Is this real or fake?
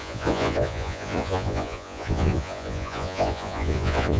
fake